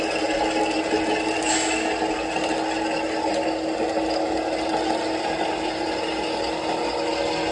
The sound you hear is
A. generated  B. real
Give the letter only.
B